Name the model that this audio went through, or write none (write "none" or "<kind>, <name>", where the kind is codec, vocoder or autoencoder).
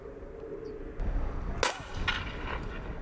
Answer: none